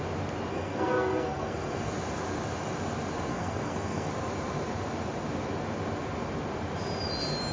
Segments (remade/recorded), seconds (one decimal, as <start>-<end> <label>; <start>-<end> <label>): 0.0-0.5 recorded; 0.5-1.9 remade; 1.9-3.3 recorded; 3.3-4.1 remade; 4.1-7.5 recorded

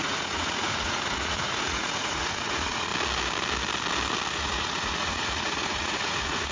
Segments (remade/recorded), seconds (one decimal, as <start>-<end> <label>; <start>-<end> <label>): 0.0-2.9 remade; 2.9-4.3 recorded; 4.3-6.5 remade

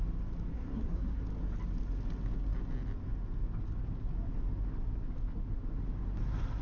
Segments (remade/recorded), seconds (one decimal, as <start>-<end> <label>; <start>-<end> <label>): 0.0-0.5 recorded; 0.5-1.2 remade; 1.2-6.6 recorded

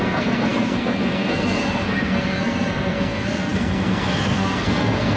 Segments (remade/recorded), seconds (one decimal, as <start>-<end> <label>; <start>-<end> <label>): 0.0-5.2 remade

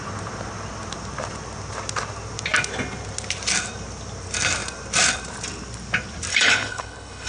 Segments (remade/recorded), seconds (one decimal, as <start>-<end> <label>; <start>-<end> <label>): 0.0-6.3 recorded; 6.3-7.3 remade

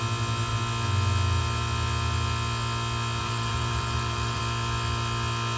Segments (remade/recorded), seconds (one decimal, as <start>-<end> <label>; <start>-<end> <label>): 0.0-3.2 recorded; 3.2-4.4 remade; 4.4-5.6 recorded